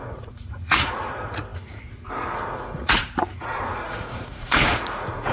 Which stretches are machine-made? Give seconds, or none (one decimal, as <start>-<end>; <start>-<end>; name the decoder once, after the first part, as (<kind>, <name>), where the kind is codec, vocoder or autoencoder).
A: 0.0-5.3 (vocoder, Vocos)